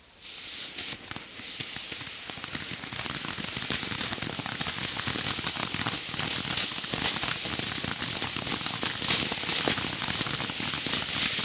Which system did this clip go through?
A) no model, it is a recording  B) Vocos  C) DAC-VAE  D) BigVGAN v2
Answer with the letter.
A